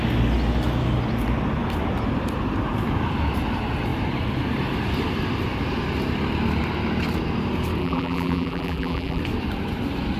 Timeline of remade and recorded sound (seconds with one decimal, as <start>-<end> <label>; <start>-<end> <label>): 0.0-7.8 recorded; 7.8-9.2 remade; 9.2-10.2 recorded